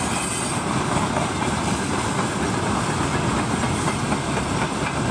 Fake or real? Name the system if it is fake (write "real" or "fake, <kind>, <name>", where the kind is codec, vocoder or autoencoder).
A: real